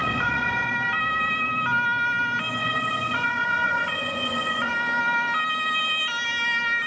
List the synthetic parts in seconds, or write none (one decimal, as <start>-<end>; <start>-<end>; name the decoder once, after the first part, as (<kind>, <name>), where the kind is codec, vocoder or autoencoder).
0.0-0.7 (vocoder, Vocos); 2.6-4.7